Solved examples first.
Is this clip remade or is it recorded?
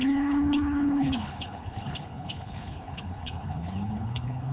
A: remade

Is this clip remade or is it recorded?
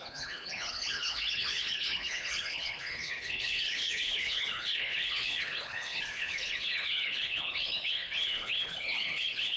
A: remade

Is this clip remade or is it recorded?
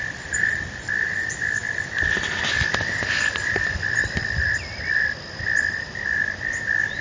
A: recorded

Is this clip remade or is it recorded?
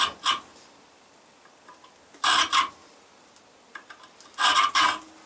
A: recorded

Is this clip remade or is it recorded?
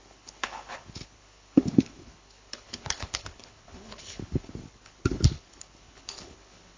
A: remade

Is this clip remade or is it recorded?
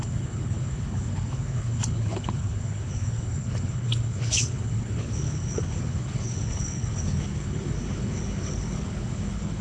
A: remade